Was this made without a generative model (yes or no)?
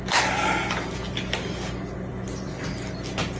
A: yes